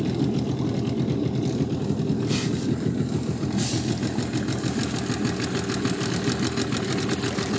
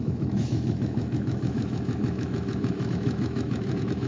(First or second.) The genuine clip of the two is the first